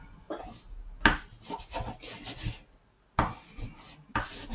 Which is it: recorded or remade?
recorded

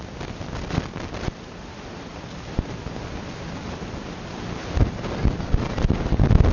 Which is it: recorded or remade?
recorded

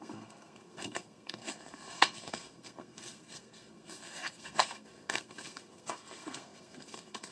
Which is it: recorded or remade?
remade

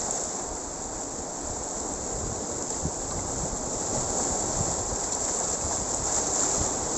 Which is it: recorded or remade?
recorded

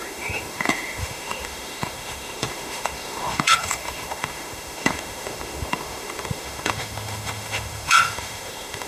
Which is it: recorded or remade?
remade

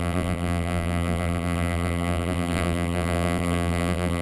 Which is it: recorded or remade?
remade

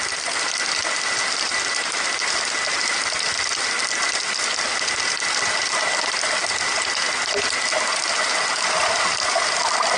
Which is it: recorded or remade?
recorded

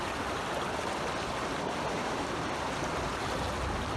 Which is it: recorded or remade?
recorded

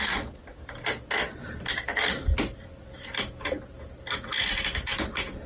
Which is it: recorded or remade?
remade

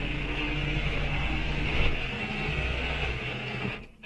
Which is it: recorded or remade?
remade